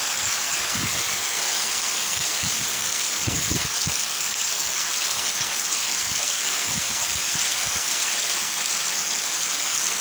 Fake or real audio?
fake